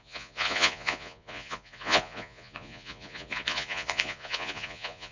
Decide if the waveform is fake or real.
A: fake